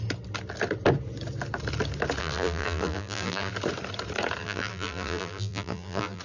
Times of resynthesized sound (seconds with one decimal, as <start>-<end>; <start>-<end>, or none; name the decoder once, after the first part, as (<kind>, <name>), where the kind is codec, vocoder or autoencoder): 2.2-3.5 (vocoder, BigVGAN v2); 4.4-6.2